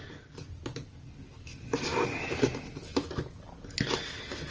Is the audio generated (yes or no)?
no